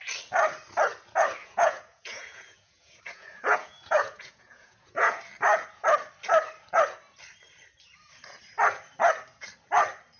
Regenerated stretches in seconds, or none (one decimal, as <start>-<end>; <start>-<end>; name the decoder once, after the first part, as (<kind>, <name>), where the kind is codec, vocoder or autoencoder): 1.4-5.2 (vocoder, Vocos)